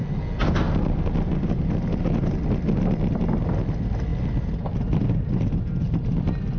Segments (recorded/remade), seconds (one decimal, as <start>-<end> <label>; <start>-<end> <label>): 0.0-6.6 recorded

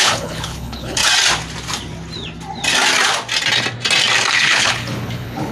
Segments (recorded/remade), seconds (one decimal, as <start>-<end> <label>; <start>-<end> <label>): 0.0-1.0 remade; 1.0-4.3 recorded; 4.3-5.5 remade

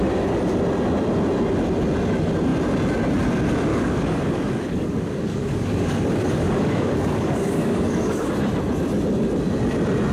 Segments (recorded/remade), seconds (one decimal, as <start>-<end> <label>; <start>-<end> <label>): 0.0-3.7 recorded; 3.7-8.3 remade; 8.3-10.1 recorded